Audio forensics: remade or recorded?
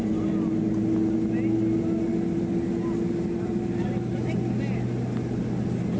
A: recorded